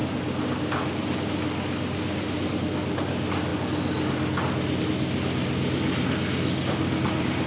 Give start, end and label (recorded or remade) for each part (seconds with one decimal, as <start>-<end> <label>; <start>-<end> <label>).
0.0-7.5 recorded